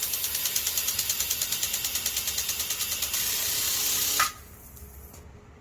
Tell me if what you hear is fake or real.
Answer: real